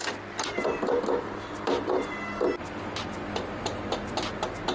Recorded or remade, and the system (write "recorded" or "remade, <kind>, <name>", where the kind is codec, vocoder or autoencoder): recorded